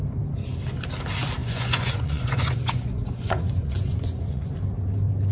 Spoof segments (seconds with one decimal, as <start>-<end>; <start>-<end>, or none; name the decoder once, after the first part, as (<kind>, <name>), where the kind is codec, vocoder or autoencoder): 1.4-4.6 (vocoder, Vocos)